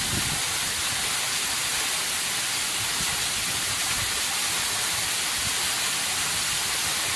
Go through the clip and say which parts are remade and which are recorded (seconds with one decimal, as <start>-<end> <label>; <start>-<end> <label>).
0.0-7.2 recorded